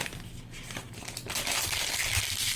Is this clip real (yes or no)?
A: yes